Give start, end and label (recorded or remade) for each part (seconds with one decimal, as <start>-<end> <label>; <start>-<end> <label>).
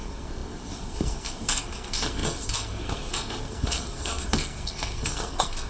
0.0-5.7 remade